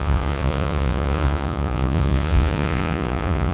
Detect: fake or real fake